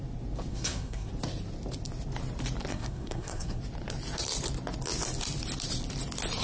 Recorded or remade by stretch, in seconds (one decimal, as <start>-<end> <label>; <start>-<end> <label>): 0.0-0.5 recorded; 0.5-1.1 remade; 1.1-2.7 recorded; 2.7-3.6 remade; 3.6-6.4 recorded